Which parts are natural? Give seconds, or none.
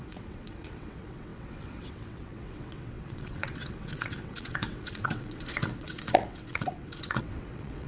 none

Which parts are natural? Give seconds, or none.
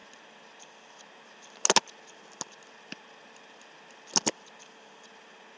0.0-5.6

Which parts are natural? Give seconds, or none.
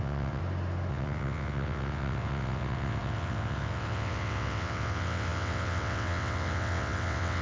0.4-0.9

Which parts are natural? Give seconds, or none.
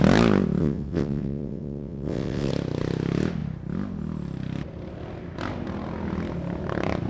0.0-0.6; 2.5-7.1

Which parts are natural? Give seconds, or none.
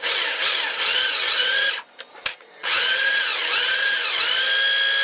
0.0-0.9; 1.7-2.3; 4.2-5.0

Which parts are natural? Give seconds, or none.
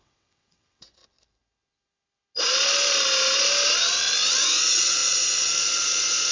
1.0-4.6; 5.0-6.3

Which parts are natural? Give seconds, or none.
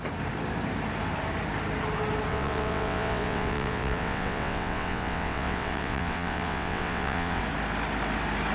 0.0-2.3; 7.4-8.5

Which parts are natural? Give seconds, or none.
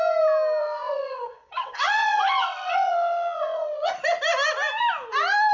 0.0-0.6; 3.9-5.5